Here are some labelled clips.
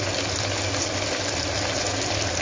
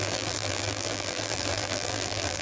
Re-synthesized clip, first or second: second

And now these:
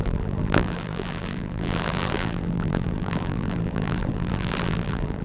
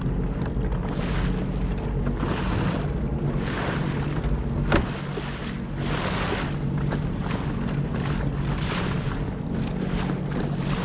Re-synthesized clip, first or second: first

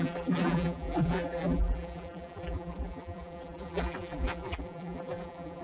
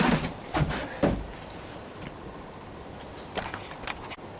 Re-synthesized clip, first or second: first